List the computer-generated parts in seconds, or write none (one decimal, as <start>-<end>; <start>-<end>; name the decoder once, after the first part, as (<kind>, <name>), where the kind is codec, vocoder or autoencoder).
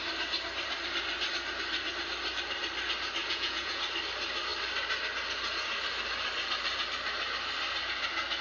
3.2-3.8 (vocoder, Vocos)